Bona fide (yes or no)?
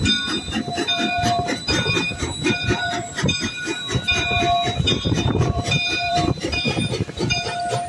no